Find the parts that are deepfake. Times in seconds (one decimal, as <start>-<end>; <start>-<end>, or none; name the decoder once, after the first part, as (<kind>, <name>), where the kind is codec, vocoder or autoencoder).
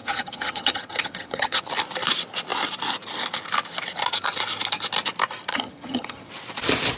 0.0-1.6 (vocoder, HiFi-GAN); 5.5-6.3